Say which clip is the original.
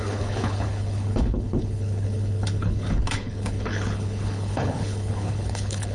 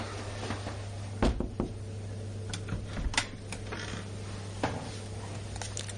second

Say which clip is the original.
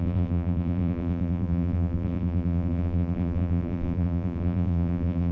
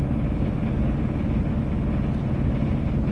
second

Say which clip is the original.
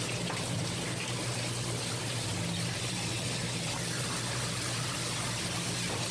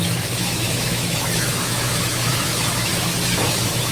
first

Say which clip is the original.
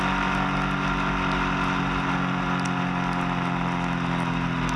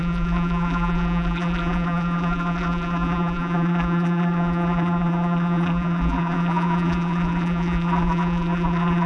first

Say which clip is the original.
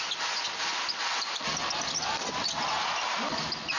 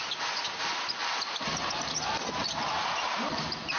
first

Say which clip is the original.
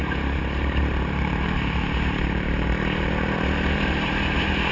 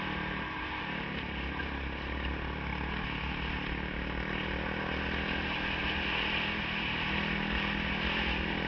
second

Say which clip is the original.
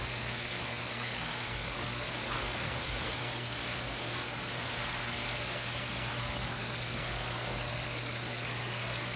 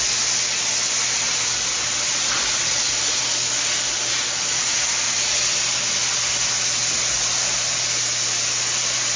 second